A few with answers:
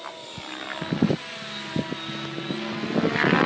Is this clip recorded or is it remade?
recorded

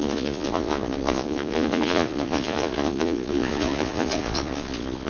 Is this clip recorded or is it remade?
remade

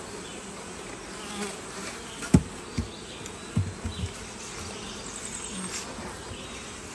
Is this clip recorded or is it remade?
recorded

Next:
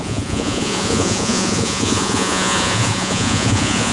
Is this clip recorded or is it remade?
remade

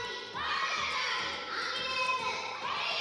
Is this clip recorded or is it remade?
recorded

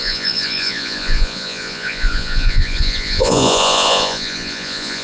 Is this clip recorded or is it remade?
remade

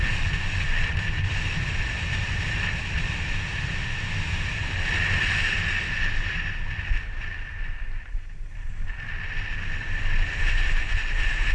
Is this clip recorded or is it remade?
recorded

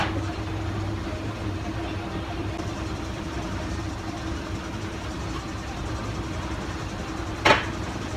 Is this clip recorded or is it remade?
recorded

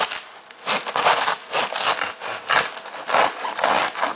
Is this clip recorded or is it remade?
recorded